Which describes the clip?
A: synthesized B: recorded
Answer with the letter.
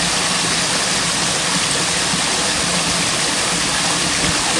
B